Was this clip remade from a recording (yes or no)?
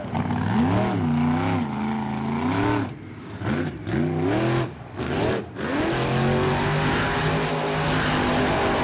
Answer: no